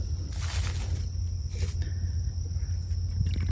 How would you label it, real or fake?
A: real